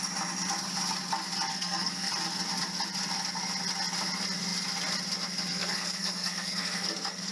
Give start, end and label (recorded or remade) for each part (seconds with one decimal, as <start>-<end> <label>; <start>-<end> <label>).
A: 0.0-1.5 recorded; 1.5-2.1 remade; 2.1-5.5 recorded; 5.5-7.3 remade